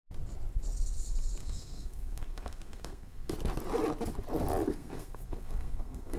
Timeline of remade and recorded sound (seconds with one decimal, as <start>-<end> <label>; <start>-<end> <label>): 0.0-1.4 recorded; 1.4-3.3 remade; 3.3-4.7 recorded; 4.7-6.2 remade